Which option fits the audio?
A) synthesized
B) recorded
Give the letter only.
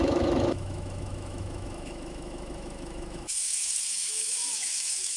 A